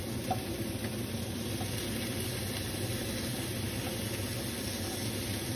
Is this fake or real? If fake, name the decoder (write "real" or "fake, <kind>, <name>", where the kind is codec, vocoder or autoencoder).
real